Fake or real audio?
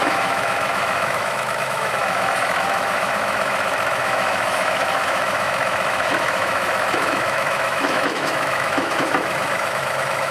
fake